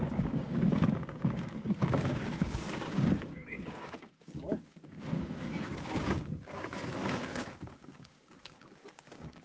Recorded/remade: remade